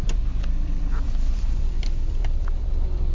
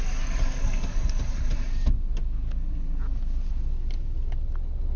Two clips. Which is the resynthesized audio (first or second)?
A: first